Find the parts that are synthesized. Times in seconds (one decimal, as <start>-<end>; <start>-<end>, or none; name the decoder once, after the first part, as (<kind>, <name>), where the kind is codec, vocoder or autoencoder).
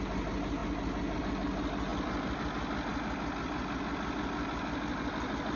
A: 0.6-1.2 (vocoder, BigVGAN v2); 1.9-2.4